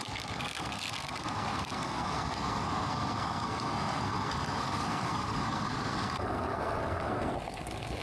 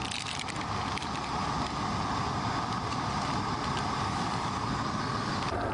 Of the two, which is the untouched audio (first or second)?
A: second